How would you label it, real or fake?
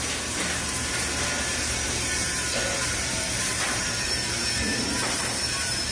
fake